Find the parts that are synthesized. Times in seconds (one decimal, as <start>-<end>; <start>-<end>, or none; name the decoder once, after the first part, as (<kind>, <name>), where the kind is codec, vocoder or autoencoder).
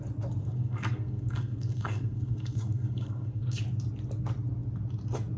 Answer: 0.4-3.6 (codec, SNAC)